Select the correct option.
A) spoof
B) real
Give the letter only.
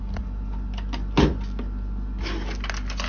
B